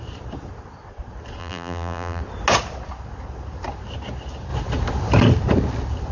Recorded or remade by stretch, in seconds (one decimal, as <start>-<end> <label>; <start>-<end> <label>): 0.0-1.4 recorded; 1.4-2.2 remade; 2.2-6.1 recorded

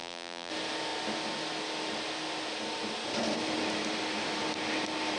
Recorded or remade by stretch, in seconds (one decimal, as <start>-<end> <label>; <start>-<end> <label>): 0.0-0.5 remade; 0.5-5.2 recorded

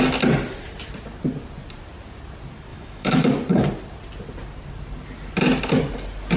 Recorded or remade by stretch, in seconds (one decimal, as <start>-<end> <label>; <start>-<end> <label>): 0.0-2.7 recorded; 2.7-3.3 remade; 3.3-6.4 recorded

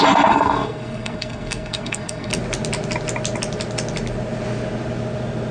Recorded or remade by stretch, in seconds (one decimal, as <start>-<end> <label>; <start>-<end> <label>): 0.0-2.3 remade; 2.3-5.5 recorded

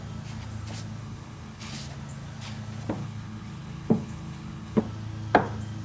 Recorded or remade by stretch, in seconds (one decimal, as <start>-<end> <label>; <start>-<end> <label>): 0.0-1.0 recorded; 1.0-1.7 remade; 1.7-3.0 recorded; 3.0-4.8 remade; 4.8-5.8 recorded

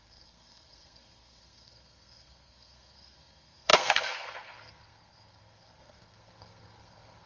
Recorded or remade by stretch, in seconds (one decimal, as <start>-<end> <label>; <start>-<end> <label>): 0.0-7.3 remade

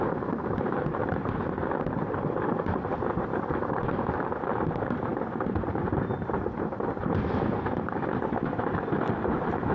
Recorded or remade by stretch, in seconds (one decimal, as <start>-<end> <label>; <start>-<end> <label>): 0.0-9.7 remade

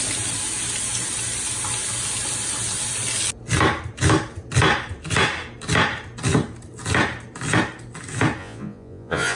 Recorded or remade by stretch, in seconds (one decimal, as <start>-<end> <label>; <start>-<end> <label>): 0.0-8.4 recorded; 8.4-9.4 remade